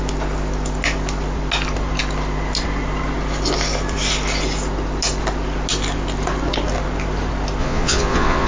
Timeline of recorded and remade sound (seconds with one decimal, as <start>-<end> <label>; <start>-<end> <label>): 0.0-7.6 recorded; 7.6-8.5 remade

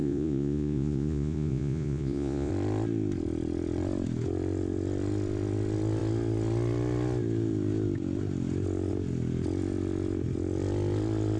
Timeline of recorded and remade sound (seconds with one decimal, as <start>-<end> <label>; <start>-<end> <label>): 0.0-2.5 remade; 2.5-11.4 recorded

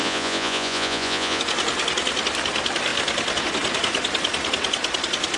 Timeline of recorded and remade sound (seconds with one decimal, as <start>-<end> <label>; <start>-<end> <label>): 0.0-1.4 remade; 1.4-5.4 recorded

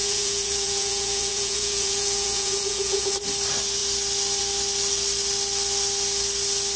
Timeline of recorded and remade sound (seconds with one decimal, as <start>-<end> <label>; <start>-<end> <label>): 0.0-3.1 remade; 3.1-6.8 recorded

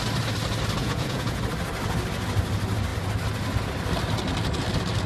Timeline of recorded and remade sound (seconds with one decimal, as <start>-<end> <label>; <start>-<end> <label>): 0.0-0.8 recorded; 0.8-1.4 remade; 1.4-5.1 recorded

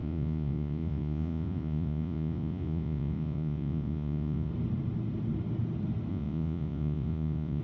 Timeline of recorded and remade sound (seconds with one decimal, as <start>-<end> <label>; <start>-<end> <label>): 0.0-4.5 remade; 4.5-6.1 recorded; 6.1-7.6 remade

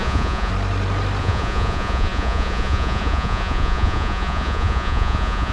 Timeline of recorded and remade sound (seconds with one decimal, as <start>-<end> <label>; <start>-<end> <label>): 0.0-0.5 remade; 0.5-1.2 recorded; 1.2-5.5 remade